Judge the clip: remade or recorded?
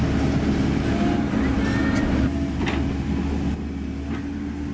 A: recorded